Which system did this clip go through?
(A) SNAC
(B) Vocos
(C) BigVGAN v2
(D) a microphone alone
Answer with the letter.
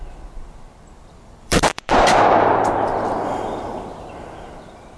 C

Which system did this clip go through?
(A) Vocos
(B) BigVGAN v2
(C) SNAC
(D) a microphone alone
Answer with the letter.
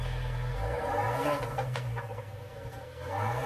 C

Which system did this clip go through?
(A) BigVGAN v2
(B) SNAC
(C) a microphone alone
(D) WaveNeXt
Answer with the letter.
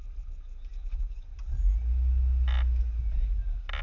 C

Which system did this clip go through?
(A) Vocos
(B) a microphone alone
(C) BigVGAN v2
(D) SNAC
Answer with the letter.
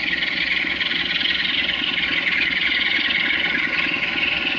B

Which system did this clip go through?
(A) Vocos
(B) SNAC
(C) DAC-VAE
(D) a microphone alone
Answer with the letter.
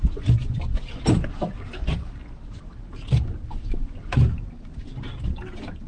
D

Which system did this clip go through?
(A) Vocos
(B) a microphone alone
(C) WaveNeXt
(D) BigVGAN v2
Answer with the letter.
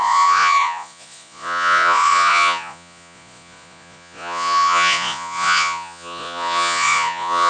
A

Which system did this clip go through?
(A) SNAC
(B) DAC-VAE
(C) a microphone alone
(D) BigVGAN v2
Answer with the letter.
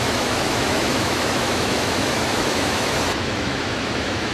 B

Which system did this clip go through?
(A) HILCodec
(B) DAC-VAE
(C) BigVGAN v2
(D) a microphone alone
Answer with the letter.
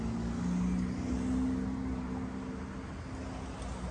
D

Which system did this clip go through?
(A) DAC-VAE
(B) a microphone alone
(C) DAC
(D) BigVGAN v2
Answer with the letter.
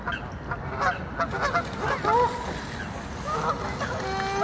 B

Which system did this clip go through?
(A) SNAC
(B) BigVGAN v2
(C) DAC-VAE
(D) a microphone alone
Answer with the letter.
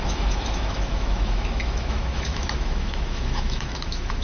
C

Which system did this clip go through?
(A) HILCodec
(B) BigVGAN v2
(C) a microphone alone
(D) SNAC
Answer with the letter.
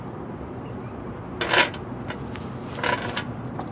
C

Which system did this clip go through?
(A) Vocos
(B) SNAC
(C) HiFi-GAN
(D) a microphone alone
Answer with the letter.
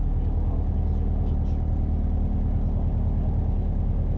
D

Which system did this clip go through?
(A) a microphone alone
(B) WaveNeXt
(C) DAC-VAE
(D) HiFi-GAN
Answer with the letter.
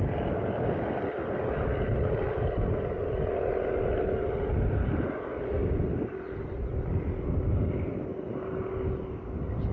A